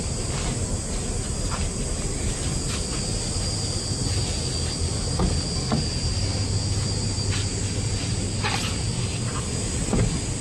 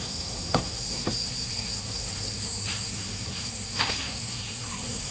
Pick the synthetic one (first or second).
second